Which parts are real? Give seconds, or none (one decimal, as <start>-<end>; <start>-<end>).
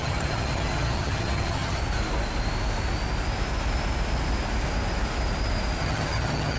1.8-5.8